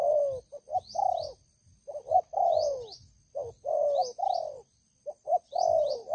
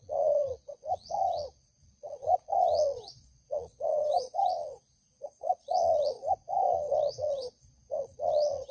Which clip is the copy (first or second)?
second